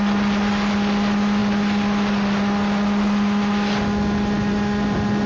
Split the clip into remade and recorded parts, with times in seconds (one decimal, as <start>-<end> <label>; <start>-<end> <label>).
0.0-5.3 recorded